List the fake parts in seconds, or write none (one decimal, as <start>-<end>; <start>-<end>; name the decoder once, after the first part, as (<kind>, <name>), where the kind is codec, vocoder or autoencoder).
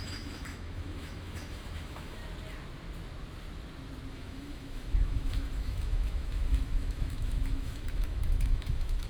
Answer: 0.0-2.2 (autoencoder, DAC-VAE); 4.1-9.1